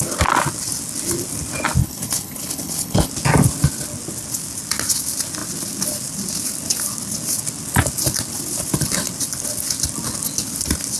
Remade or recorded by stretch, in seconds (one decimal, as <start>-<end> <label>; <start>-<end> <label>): 0.0-1.8 recorded; 1.8-3.1 remade; 3.1-11.0 recorded